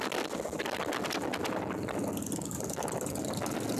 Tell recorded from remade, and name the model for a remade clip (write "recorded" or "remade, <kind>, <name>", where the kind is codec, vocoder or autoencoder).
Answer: recorded